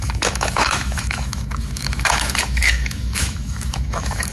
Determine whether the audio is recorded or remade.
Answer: remade